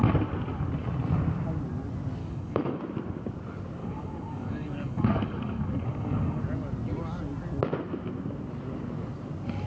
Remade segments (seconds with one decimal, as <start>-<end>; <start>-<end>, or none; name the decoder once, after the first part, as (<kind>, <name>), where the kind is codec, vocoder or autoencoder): 2.2-2.8 (codec, DAC); 3.8-6.4